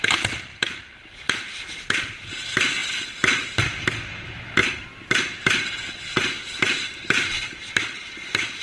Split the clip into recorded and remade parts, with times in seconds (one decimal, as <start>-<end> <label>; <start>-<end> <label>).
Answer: 0.0-0.5 recorded; 0.5-1.3 remade; 1.3-4.6 recorded; 4.6-7.8 remade; 7.8-8.6 recorded